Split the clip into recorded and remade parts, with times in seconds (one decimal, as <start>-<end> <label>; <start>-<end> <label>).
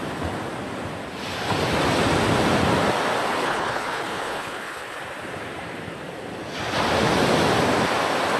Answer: 0.0-3.4 recorded; 3.4-5.0 remade; 5.0-8.4 recorded